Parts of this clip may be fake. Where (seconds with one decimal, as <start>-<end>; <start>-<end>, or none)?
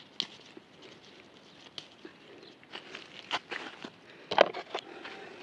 none